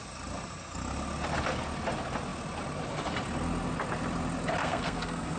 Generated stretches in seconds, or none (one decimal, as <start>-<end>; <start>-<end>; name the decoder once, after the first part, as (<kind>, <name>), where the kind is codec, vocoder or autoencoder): 4.6-5.4 (codec, SNAC)